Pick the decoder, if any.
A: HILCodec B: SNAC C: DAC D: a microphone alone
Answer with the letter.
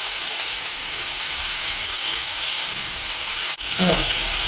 C